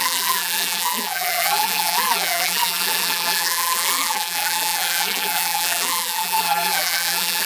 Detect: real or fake fake